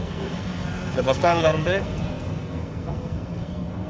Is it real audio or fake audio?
fake